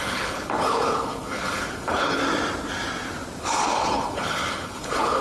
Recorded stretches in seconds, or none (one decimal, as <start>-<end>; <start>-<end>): 2.2-3.4